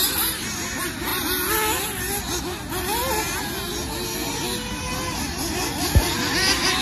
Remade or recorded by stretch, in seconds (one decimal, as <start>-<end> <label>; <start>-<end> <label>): 0.0-6.8 recorded